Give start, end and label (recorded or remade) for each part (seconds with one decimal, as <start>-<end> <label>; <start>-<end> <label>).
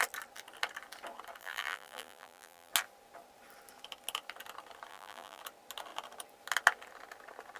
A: 0.0-1.4 recorded; 1.4-2.7 remade; 2.7-4.9 recorded; 4.9-5.4 remade; 5.4-7.6 recorded